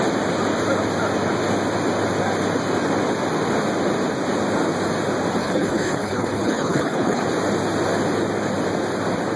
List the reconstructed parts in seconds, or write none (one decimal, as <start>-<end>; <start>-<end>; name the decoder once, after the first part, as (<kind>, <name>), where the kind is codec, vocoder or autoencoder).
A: 5.4-7.2 (codec, HILCodec)

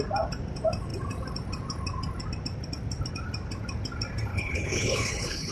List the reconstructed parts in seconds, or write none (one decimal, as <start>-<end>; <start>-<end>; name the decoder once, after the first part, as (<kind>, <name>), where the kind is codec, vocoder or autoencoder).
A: 4.3-5.5 (codec, HILCodec)

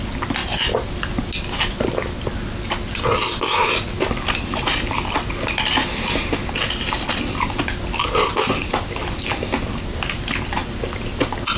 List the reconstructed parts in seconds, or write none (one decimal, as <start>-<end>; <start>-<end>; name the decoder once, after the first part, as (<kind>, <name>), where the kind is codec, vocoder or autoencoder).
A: none

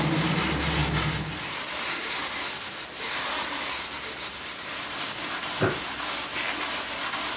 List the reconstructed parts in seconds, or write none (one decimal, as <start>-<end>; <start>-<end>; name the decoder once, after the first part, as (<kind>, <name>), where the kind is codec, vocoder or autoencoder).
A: none

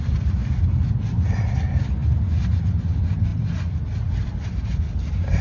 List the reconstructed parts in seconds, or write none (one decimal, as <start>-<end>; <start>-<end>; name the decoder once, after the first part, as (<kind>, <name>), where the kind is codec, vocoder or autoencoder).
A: none

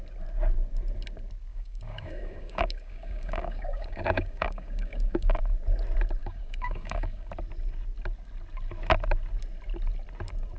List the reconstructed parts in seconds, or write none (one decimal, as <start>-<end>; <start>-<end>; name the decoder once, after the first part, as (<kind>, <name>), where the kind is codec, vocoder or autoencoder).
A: 1.5-5.4 (codec, DAC); 6.2-7.3